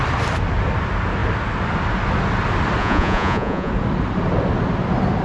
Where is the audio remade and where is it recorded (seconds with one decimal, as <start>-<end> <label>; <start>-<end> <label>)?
0.0-2.8 recorded; 2.8-3.7 remade; 3.7-5.2 recorded